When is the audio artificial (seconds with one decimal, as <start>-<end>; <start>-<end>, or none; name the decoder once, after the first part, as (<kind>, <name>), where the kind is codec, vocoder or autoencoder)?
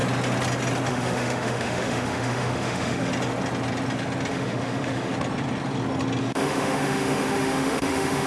0.9-3.1 (autoencoder, DAC-VAE); 4.3-5.1; 6.2-8.3